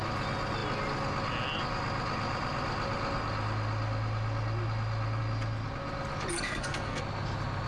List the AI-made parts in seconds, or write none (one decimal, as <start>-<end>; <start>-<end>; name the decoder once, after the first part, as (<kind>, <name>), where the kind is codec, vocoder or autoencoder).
6.3-7.0 (codec, SNAC)